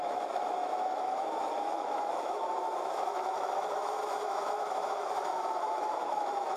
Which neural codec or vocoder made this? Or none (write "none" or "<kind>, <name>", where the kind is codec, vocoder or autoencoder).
autoencoder, DAC-VAE